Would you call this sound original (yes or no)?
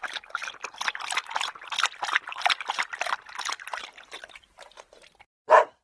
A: yes